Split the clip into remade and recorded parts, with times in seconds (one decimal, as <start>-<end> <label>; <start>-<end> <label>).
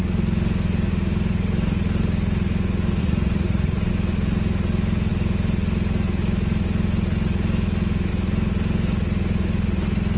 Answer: 0.0-3.0 recorded; 3.0-3.9 remade; 3.9-10.2 recorded